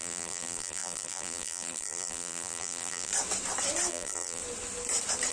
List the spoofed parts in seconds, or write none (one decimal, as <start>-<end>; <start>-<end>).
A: 0.0-3.1; 3.9-4.4